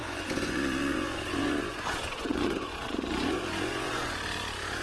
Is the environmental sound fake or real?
fake